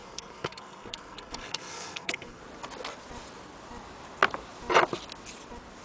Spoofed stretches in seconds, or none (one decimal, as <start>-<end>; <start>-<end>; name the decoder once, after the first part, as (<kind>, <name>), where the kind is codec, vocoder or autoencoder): 0.0-2.4 (codec, SNAC)